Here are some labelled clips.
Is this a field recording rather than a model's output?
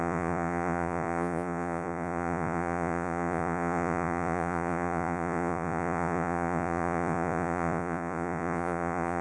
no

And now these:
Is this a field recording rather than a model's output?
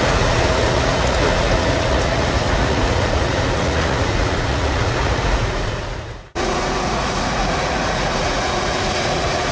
no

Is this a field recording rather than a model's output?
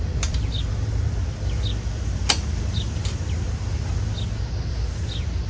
yes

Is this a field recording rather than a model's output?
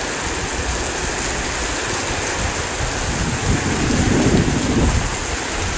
yes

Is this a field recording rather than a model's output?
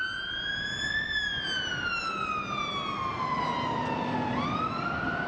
yes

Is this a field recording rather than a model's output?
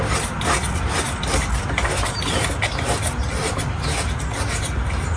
yes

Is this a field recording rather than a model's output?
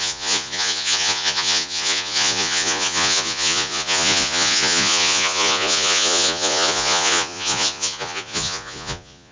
no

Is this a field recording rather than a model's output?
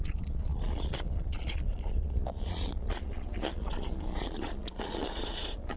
no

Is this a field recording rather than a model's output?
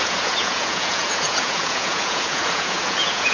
no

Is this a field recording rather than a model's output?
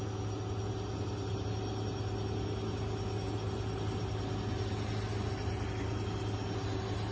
yes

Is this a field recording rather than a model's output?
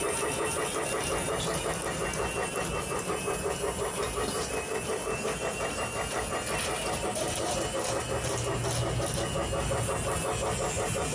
yes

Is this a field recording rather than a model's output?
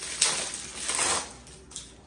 yes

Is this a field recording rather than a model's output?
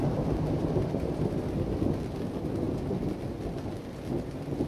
yes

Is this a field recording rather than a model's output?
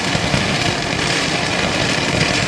yes